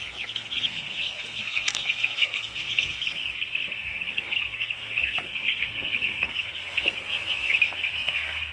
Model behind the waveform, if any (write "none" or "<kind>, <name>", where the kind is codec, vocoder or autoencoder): codec, SNAC